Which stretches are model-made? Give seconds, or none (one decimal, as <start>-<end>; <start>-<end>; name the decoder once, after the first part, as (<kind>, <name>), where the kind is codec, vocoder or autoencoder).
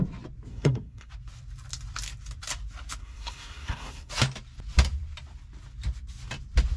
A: 0.5-1.1 (codec, SNAC); 3.0-4.1